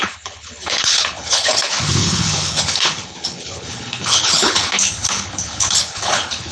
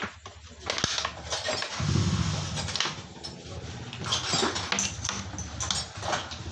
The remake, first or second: first